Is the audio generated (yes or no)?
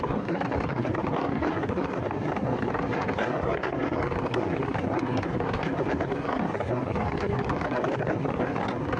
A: yes